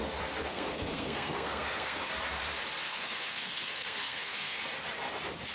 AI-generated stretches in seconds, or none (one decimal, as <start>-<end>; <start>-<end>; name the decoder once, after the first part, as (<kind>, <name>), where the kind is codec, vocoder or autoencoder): 0.4-2.1 (codec, SNAC); 2.8-4.6